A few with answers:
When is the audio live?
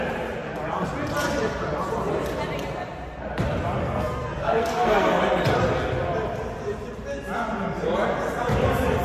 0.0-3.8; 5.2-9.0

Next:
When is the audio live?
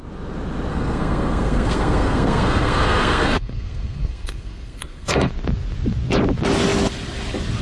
0.0-0.7; 5.3-7.6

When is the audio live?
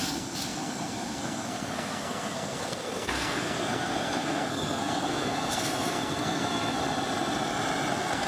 6.8-7.9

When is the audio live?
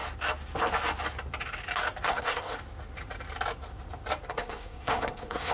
0.0-2.1; 2.5-4.3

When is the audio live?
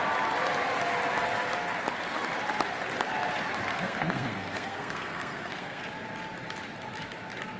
0.0-3.7; 5.8-7.6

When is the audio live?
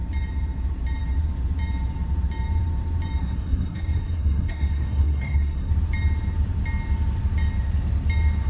0.0-3.2; 5.7-8.5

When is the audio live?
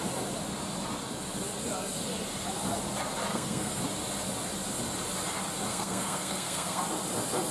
0.0-3.3; 3.8-5.7; 6.8-7.5